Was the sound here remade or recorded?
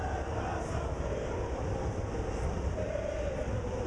remade